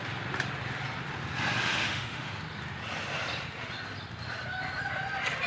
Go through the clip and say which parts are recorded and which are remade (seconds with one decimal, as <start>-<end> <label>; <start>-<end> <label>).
0.0-1.7 recorded; 1.7-2.4 remade; 2.4-5.5 recorded